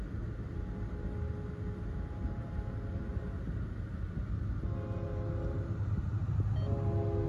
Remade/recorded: recorded